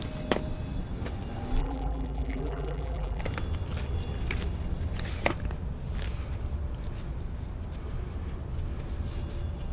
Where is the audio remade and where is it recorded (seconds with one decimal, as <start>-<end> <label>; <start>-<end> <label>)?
0.0-1.6 recorded; 1.6-3.2 remade; 3.2-9.7 recorded